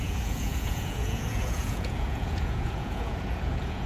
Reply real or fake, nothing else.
fake